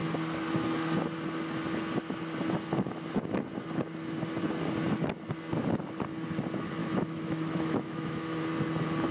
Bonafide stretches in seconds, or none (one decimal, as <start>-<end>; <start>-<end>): 0.0-6.8; 8.4-9.1